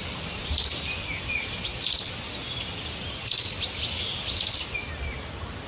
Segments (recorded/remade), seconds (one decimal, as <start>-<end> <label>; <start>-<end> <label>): 0.0-5.7 recorded